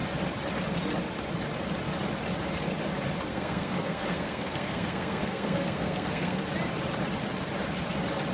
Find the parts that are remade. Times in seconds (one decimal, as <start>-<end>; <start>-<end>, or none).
3.3-6.4